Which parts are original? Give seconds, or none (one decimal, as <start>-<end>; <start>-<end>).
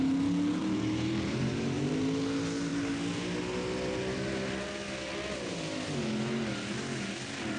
0.0-0.6; 1.9-7.6